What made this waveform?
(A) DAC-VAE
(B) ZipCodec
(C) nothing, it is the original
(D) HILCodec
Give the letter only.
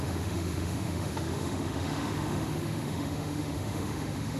A